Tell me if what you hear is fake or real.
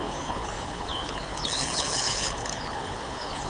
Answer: fake